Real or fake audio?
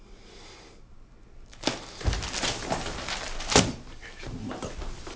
real